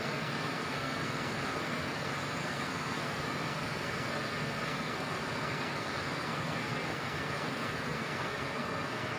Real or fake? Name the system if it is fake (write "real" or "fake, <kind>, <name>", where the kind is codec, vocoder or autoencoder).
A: fake, codec, SNAC